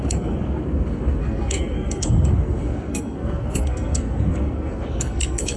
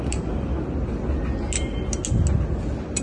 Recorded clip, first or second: second